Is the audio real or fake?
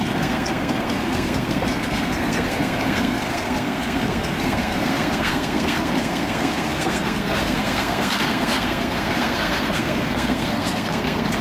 fake